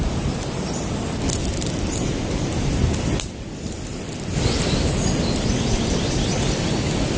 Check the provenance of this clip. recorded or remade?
recorded